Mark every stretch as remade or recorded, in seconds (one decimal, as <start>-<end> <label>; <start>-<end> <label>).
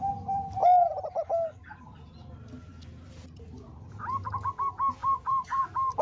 0.0-5.0 recorded; 5.0-5.6 remade; 5.6-6.0 recorded